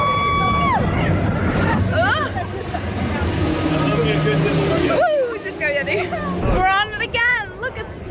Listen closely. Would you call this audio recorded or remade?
recorded